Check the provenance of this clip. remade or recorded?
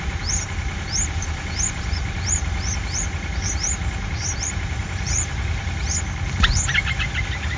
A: remade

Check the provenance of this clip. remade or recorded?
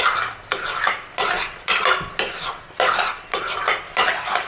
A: recorded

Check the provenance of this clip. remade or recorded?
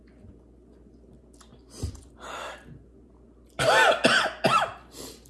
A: recorded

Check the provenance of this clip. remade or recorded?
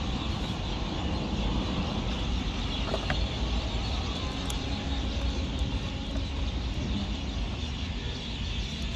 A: recorded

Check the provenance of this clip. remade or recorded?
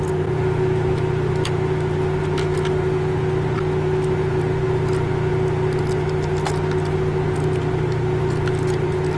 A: recorded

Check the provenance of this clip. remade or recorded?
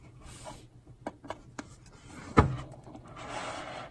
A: remade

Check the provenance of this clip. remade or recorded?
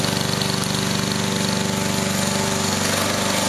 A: recorded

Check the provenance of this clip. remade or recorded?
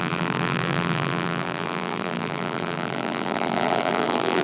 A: remade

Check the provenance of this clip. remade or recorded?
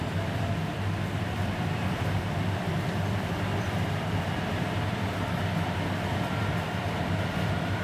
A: remade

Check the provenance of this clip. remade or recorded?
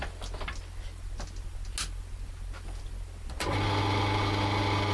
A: recorded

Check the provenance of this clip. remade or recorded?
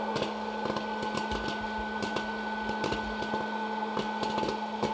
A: recorded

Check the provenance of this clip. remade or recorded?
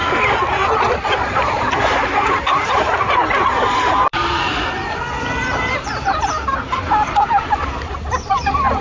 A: remade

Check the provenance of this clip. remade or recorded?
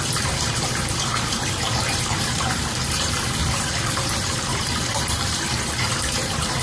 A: remade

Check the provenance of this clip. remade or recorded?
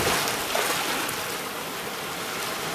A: recorded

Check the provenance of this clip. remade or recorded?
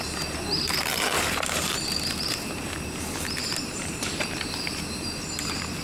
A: remade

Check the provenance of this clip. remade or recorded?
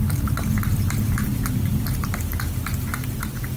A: recorded